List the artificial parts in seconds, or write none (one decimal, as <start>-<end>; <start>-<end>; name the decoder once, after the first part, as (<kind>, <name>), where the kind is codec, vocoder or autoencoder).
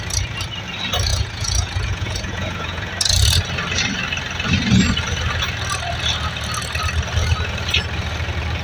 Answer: 1.1-2.9 (vocoder, Vocos)